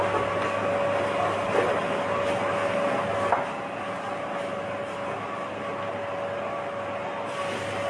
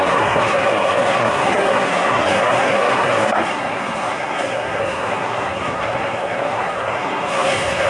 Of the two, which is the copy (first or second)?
second